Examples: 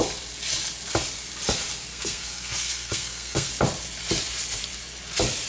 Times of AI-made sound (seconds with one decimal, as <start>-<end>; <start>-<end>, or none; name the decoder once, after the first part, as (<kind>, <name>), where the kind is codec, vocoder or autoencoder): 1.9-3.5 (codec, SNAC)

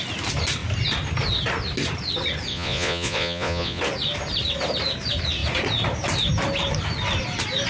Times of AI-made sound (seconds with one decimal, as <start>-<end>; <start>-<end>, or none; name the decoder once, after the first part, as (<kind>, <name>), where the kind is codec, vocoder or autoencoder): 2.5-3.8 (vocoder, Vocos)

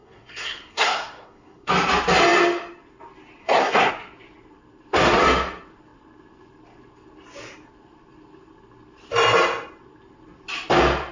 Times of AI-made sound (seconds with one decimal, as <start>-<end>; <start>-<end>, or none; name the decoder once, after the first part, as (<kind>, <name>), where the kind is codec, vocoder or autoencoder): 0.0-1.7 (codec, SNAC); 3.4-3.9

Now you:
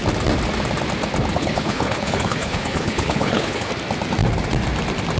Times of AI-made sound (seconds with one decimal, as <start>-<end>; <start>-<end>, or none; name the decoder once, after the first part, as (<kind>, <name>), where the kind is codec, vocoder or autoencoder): 1.3-3.7 (codec, HILCodec)

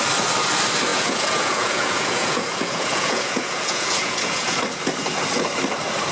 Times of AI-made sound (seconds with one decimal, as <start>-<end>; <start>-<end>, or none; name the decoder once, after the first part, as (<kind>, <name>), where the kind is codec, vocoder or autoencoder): 0.9-4.6 (vocoder, Vocos)